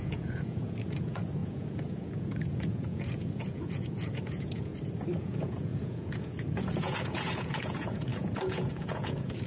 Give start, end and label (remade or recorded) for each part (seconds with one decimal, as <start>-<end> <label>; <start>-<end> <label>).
0.0-4.7 remade; 4.7-5.2 recorded; 5.2-9.5 remade